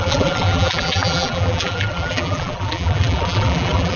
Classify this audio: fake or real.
fake